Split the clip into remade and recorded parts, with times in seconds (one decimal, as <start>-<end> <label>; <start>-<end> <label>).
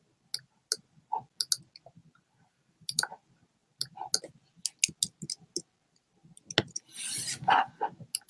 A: 0.0-2.0 recorded; 2.0-3.1 remade; 3.1-6.9 recorded; 6.9-7.5 remade; 7.5-8.3 recorded